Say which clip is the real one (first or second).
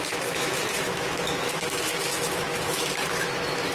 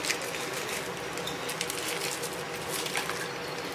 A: second